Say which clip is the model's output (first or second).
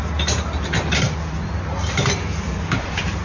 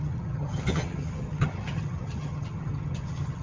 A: second